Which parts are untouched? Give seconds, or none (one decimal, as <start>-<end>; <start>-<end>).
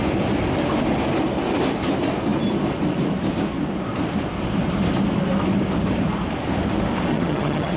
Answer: 0.0-7.1